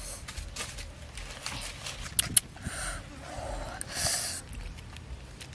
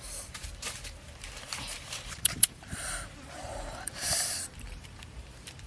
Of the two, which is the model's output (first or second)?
second